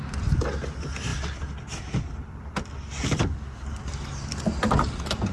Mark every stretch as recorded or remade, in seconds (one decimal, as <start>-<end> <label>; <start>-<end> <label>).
0.0-5.3 recorded